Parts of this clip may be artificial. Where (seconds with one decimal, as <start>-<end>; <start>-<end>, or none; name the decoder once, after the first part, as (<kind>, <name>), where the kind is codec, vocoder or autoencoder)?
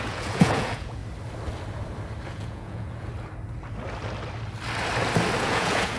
0.0-1.0 (vocoder, Vocos); 2.3-3.1; 5.4-6.0